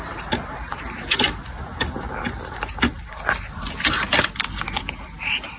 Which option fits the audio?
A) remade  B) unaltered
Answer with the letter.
B